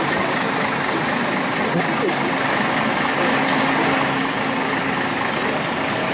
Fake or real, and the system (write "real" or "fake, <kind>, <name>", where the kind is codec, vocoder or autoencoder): real